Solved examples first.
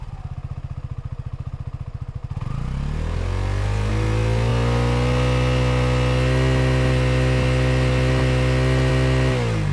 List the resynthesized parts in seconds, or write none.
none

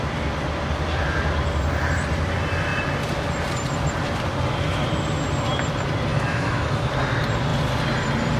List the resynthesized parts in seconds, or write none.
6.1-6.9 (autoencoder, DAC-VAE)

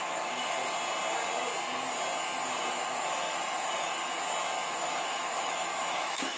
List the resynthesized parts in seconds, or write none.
0.0-0.6 (autoencoder, DAC-VAE); 2.7-4.1; 4.7-6.4

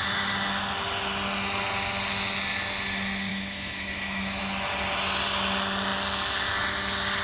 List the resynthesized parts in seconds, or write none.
3.3-4.4 (autoencoder, DAC-VAE)

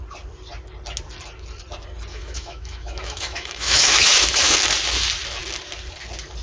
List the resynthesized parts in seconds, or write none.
2.1-4.4 (autoencoder, DAC-VAE)

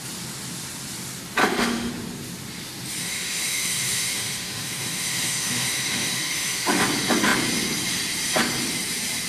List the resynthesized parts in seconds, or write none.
1.4-1.9 (autoencoder, DAC-VAE); 3.0-6.8